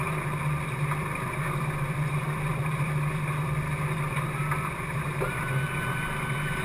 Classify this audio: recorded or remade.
remade